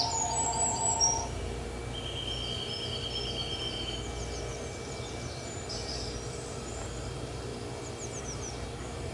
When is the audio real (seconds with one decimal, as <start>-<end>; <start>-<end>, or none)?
1.8-4.5; 7.5-8.2